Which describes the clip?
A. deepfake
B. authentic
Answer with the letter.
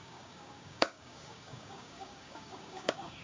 A